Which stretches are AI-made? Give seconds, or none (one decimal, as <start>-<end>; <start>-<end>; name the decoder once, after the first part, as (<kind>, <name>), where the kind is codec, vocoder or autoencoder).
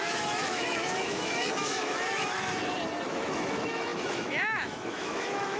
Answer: 0.0-2.6 (autoencoder, DAC-VAE); 3.1-5.6